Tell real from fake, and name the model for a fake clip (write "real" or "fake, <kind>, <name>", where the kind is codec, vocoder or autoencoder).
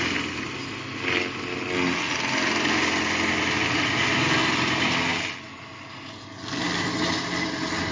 real